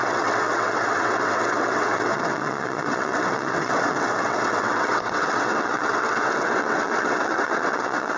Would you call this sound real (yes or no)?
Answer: no